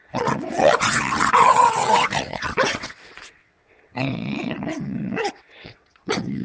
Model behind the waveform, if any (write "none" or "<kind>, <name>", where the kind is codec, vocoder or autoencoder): vocoder, WaveNeXt